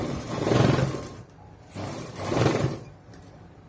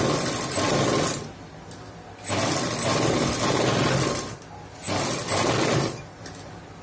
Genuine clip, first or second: second